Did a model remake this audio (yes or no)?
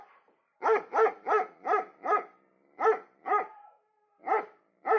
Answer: no